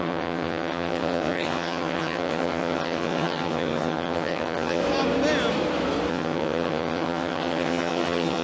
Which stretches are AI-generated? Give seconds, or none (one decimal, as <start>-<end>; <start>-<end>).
0.0-4.8; 6.1-8.4